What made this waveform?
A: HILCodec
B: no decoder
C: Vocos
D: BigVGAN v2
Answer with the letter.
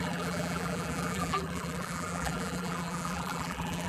D